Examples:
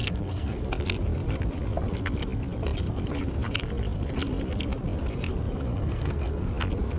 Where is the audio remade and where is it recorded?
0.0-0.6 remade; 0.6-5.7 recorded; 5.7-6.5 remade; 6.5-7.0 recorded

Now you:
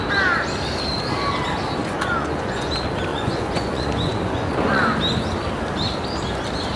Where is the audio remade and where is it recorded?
0.0-1.8 recorded; 1.8-2.7 remade; 2.7-3.1 recorded; 3.1-5.0 remade; 5.0-6.8 recorded

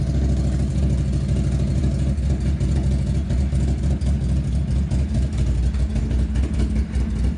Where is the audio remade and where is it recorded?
0.0-7.4 recorded

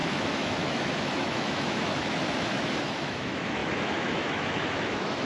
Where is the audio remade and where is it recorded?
0.0-5.3 remade

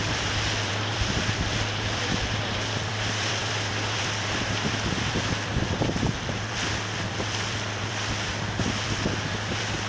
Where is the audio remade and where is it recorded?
0.0-9.9 remade

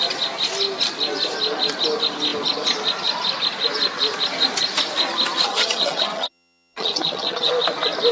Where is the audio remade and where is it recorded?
0.0-5.4 recorded; 5.4-7.5 remade; 7.5-8.1 recorded